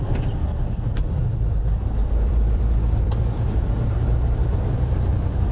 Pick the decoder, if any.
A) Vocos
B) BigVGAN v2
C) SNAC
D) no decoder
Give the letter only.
B